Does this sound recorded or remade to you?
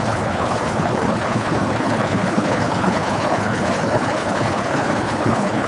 remade